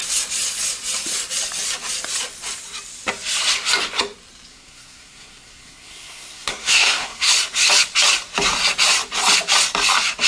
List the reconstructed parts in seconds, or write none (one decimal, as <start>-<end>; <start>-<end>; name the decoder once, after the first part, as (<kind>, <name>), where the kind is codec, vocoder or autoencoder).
4.5-7.3 (codec, SNAC)